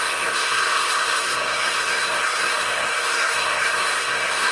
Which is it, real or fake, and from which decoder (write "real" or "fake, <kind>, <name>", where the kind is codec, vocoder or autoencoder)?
fake, codec, SNAC